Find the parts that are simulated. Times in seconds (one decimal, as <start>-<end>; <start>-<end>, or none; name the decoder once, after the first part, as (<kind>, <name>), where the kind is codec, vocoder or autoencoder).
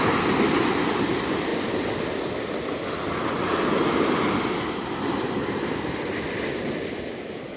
none